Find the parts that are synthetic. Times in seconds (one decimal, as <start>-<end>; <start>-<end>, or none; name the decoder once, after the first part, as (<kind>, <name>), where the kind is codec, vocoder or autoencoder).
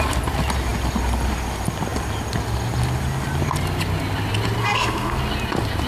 4.6-5.2 (codec, SNAC)